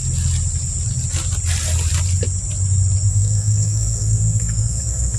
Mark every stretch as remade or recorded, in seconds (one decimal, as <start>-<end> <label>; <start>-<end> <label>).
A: 0.0-3.1 recorded; 3.1-5.2 remade